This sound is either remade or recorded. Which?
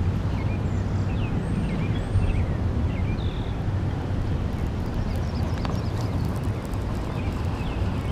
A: recorded